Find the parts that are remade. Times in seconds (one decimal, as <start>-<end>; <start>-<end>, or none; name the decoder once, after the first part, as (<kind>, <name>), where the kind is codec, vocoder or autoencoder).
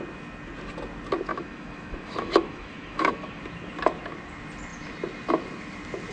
1.3-3.4 (autoencoder, DAC-VAE)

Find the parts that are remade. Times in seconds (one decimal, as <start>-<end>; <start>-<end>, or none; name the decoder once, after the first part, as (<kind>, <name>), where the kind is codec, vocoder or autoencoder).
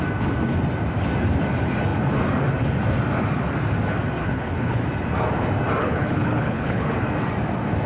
4.2-4.8 (codec, HILCodec); 5.8-6.9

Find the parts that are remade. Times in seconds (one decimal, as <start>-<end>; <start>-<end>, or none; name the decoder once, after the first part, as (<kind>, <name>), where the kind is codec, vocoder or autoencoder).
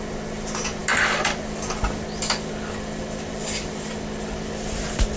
none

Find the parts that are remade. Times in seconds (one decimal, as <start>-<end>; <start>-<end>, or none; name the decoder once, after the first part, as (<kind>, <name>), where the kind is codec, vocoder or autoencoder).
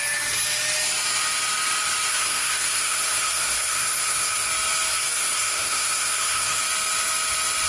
2.1-4.5 (codec, SNAC); 4.9-6.6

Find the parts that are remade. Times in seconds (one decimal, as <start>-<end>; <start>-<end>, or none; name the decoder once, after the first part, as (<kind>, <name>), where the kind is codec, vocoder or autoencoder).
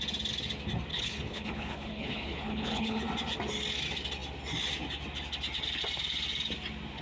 0.9-3.0 (codec, HILCodec)